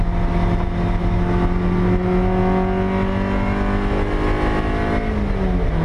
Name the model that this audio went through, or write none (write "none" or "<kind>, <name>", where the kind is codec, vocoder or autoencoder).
none